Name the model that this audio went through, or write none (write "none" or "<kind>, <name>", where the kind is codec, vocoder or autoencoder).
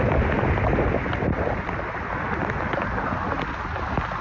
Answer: none